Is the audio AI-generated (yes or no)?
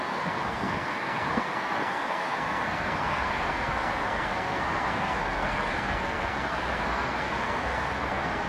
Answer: yes